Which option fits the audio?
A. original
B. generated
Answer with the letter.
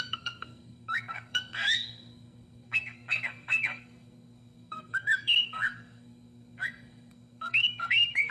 B